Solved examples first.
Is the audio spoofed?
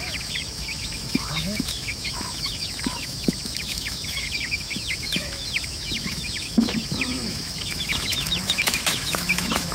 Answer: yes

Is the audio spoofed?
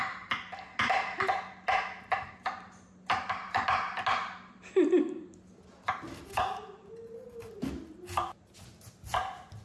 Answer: no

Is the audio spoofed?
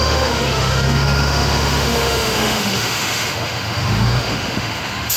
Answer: yes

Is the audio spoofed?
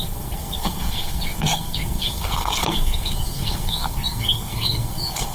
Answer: yes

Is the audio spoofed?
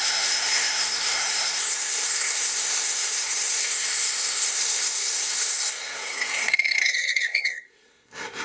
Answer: yes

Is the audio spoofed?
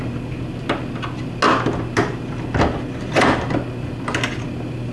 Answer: no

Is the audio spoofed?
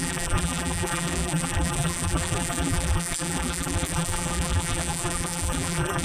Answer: yes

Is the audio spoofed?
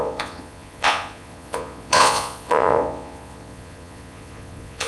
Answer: yes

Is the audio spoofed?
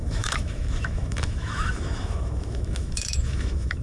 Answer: yes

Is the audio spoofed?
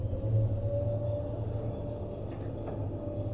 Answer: no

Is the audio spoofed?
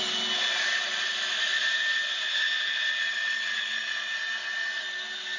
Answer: no